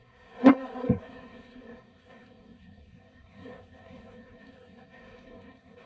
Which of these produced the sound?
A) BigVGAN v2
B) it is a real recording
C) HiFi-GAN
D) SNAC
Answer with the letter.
D